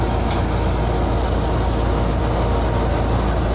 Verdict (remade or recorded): recorded